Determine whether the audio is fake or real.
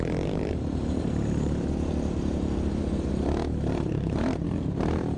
fake